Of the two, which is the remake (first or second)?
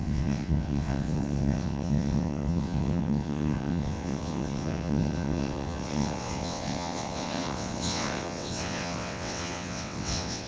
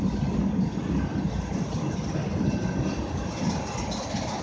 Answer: first